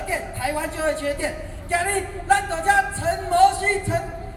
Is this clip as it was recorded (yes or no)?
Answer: yes